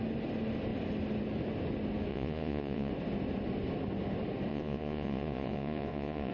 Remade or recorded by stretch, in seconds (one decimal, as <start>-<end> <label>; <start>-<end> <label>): 0.0-2.1 recorded; 2.1-2.9 remade; 2.9-4.5 recorded; 4.5-6.3 remade